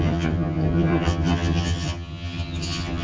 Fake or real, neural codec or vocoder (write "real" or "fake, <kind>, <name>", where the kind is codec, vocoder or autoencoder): fake, vocoder, HiFi-GAN